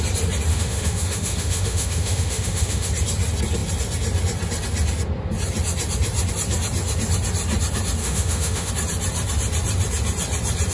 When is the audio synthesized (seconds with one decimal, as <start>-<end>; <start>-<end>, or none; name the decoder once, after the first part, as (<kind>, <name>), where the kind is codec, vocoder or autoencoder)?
0.5-2.9 (autoencoder, DAC-VAE); 8.0-8.7